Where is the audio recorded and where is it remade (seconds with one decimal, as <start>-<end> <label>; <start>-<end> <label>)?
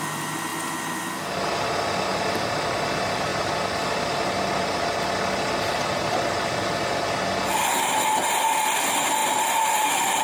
0.0-9.2 recorded; 9.2-10.2 remade